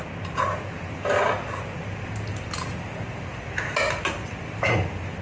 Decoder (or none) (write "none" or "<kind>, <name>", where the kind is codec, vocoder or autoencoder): none